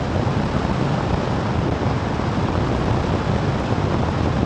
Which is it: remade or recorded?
recorded